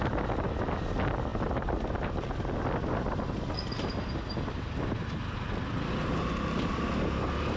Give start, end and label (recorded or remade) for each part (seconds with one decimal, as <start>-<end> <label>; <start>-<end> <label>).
0.0-7.6 recorded